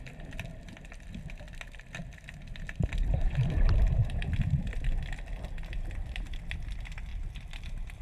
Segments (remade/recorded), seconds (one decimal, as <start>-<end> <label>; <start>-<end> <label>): 0.0-2.0 recorded; 2.0-6.5 remade; 6.5-7.1 recorded; 7.1-7.6 remade; 7.6-8.0 recorded